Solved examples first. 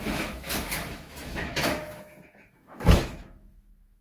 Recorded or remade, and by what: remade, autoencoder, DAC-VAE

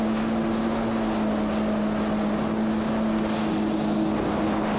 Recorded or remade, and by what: recorded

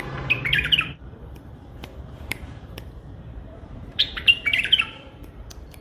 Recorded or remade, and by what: remade, vocoder, BigVGAN v2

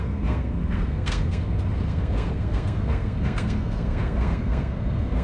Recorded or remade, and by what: remade, codec, SNAC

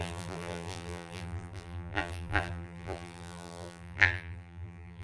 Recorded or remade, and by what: remade, vocoder, BigVGAN v2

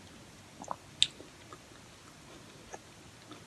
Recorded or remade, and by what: recorded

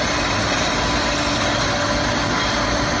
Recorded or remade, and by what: recorded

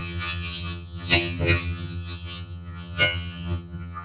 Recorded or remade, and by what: remade, vocoder, HiFi-GAN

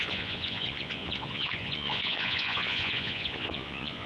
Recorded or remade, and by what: remade, vocoder, Vocos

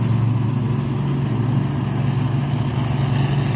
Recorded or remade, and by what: recorded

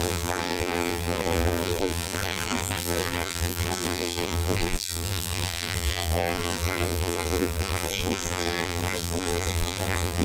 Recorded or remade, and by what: remade, vocoder, BigVGAN v2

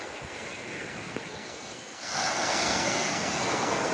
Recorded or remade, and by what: remade, codec, SNAC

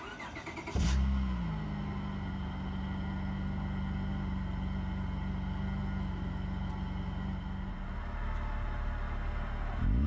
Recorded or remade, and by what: recorded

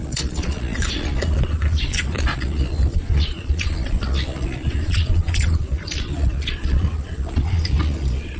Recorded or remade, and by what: remade, vocoder, Vocos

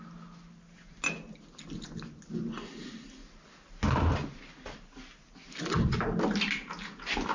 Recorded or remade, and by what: recorded